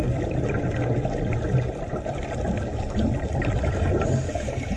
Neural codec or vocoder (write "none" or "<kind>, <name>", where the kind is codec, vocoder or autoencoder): none